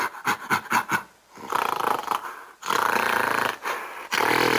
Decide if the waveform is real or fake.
real